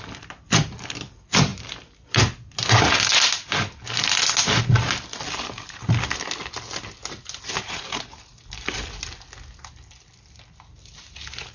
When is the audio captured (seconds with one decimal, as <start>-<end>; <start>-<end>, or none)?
0.0-11.5